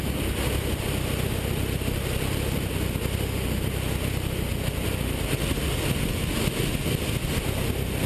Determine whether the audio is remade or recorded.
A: recorded